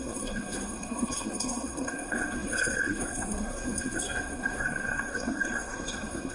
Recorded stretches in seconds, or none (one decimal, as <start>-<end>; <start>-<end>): none